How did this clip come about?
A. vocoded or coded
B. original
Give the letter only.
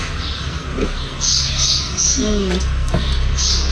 A